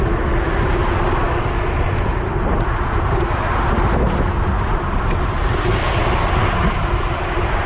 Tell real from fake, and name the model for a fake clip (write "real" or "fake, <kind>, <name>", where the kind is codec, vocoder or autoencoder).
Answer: real